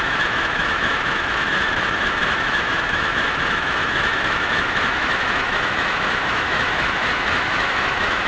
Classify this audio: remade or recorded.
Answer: remade